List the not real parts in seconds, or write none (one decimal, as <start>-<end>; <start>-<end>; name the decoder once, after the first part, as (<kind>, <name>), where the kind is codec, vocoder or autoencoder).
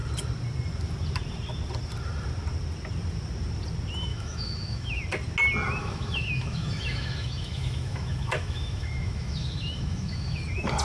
4.1-5.0 (autoencoder, DAC-VAE); 5.8-10.4